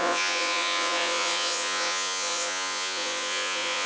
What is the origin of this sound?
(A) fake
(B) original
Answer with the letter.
A